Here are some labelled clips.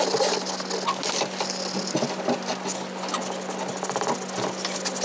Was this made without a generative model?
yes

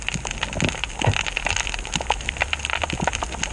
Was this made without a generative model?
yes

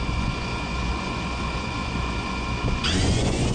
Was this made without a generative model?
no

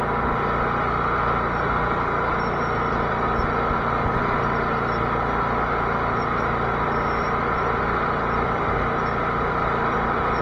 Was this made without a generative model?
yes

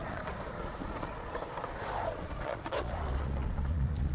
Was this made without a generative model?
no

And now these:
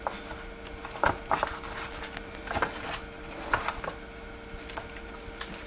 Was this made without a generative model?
yes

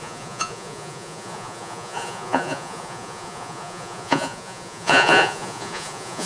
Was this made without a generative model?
no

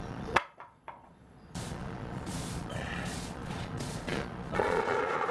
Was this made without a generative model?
no